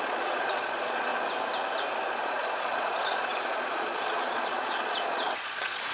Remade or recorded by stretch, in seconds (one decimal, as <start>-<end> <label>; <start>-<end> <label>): 0.0-1.1 remade; 1.1-2.1 recorded; 2.1-5.9 remade